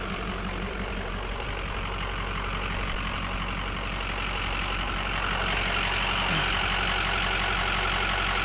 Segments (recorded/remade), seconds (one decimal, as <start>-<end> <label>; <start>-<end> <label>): 0.0-1.5 remade; 1.5-8.4 recorded